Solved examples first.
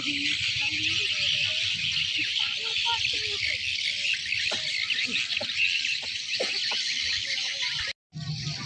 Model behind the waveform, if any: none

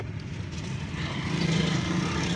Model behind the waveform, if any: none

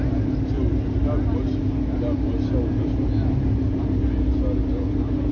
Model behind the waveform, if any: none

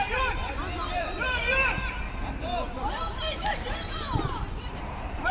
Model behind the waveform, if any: vocoder, BigVGAN v2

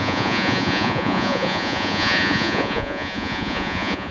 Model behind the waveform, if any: vocoder, Vocos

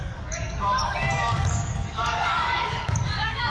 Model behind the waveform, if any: codec, DAC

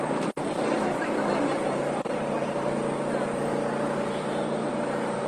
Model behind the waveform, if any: vocoder, BigVGAN v2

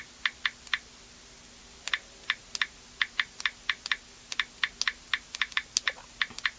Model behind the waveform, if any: none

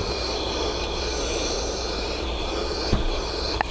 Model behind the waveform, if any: vocoder, BigVGAN v2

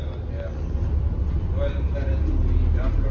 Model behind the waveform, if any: none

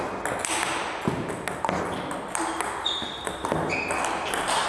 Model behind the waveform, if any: none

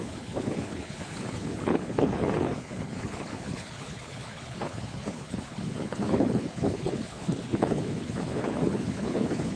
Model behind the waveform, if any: codec, HILCodec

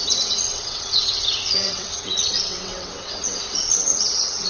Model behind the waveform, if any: vocoder, WaveNeXt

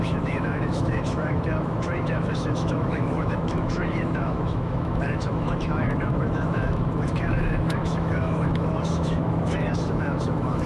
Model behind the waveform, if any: autoencoder, DAC-VAE